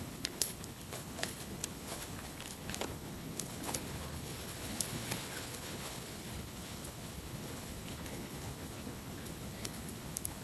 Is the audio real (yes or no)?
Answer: no